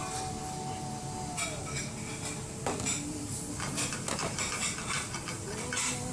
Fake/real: real